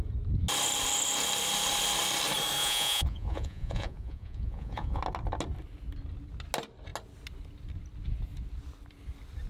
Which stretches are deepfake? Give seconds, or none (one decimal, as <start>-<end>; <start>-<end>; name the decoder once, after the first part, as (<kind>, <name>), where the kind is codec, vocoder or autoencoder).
2.6-5.0 (vocoder, Vocos)